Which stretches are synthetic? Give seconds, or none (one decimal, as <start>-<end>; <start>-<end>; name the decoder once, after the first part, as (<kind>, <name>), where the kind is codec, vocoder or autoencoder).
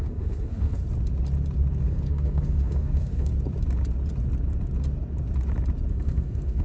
0.0-0.8 (codec, SNAC); 1.8-3.3; 5.9-6.6